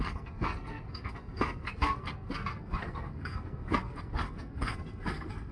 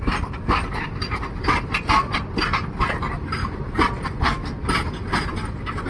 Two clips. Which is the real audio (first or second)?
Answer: second